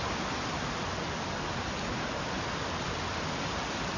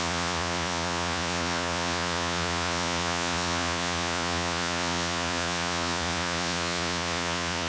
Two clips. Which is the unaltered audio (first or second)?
first